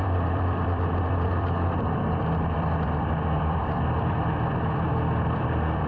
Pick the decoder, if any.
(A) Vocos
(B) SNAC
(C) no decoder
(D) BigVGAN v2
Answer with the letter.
D